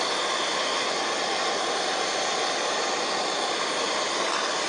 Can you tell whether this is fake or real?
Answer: real